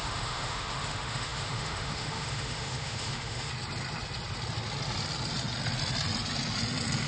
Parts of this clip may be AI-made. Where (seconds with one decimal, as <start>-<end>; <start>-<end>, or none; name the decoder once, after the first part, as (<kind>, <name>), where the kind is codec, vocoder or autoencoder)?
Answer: 0.0-3.5 (autoencoder, DAC-VAE)